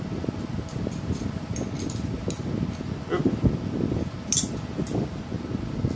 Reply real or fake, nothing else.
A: real